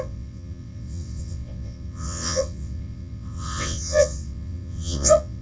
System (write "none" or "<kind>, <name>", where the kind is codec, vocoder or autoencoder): vocoder, WaveNeXt